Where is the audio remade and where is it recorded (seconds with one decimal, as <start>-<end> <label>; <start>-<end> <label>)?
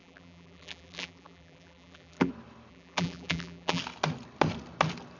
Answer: 0.0-2.3 remade; 2.3-2.7 recorded; 2.7-3.8 remade; 3.8-5.2 recorded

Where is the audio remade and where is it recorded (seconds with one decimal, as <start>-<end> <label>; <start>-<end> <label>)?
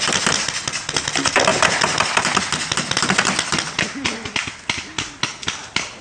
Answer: 0.0-6.0 recorded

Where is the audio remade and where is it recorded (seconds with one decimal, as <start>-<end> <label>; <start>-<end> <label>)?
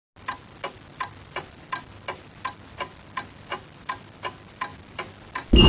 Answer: 0.0-5.7 recorded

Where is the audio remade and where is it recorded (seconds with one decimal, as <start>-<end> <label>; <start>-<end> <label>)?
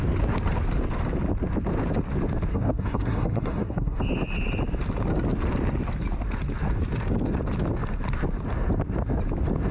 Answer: 0.0-2.5 recorded; 2.5-4.0 remade; 4.0-9.7 recorded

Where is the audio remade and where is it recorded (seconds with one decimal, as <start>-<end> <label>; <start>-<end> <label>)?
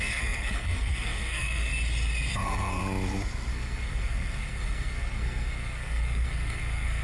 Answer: 0.0-1.7 remade; 1.7-2.3 recorded; 2.3-2.8 remade; 2.8-3.5 recorded; 3.5-7.0 remade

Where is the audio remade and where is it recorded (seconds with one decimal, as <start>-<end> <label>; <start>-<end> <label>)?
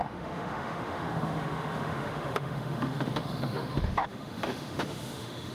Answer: 0.0-5.5 remade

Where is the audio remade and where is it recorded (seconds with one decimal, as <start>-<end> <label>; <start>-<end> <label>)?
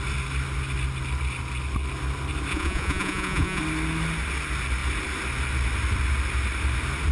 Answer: 0.0-2.5 recorded; 2.5-3.6 remade; 3.6-7.1 recorded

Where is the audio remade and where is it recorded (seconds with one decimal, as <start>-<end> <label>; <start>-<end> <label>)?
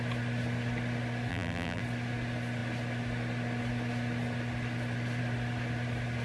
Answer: 0.0-1.3 recorded; 1.3-1.8 remade; 1.8-6.2 recorded